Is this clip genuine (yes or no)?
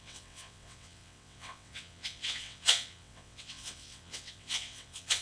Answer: no